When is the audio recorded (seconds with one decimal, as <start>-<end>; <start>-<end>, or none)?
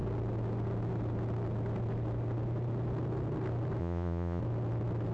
0.0-3.8; 4.4-5.1